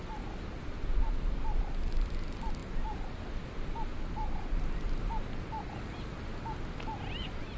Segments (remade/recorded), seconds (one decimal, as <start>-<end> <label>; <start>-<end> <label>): 0.0-7.6 recorded